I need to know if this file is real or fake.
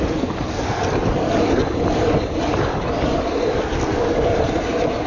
real